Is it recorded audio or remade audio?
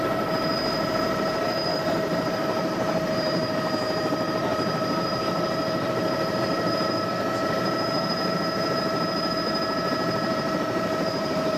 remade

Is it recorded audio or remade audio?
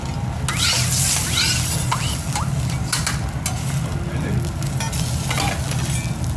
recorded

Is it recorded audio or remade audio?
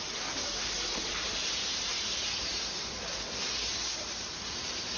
remade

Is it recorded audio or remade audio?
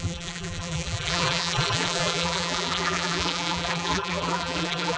remade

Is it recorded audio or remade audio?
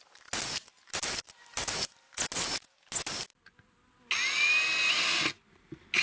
recorded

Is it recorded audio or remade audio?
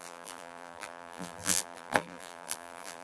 remade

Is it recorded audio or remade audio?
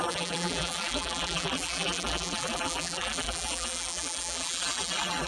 remade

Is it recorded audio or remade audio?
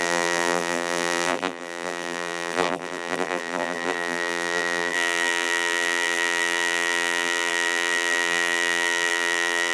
remade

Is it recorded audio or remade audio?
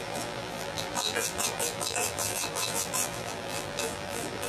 remade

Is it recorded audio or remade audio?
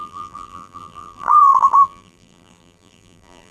remade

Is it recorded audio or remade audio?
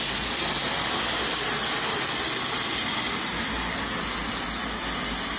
recorded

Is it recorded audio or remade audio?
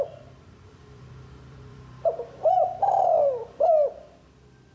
remade